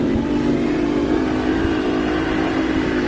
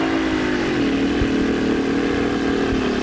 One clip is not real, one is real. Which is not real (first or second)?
first